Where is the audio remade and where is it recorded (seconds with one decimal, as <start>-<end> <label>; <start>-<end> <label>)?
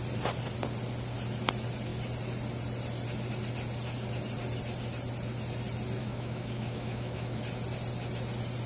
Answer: 0.0-6.0 recorded; 6.0-7.4 remade; 7.4-8.7 recorded